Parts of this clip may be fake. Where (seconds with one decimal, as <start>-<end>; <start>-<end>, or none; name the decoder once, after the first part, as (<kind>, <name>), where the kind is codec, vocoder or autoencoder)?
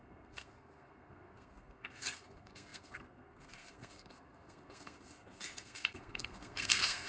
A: 0.0-7.1 (codec, SNAC)